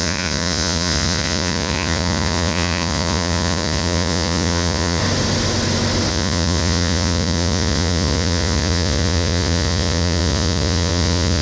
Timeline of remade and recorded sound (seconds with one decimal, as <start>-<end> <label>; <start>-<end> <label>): 0.0-5.0 remade; 5.0-6.1 recorded; 6.1-11.4 remade